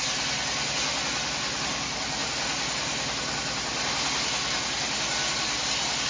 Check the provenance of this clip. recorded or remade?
recorded